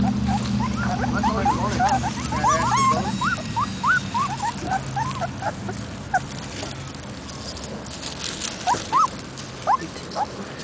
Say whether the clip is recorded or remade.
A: recorded